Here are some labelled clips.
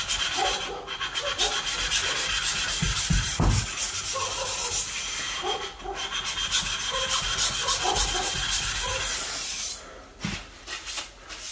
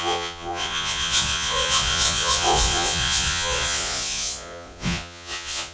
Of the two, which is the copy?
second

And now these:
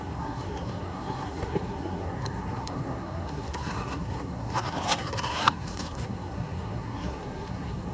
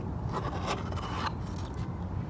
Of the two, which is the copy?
first